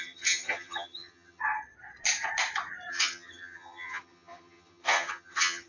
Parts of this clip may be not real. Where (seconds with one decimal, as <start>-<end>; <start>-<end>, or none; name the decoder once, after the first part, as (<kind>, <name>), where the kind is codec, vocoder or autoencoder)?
0.0-1.4 (vocoder, HiFi-GAN); 2.9-5.7